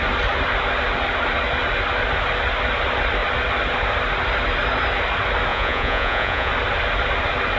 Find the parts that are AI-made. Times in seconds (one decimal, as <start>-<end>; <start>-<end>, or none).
5.5-6.5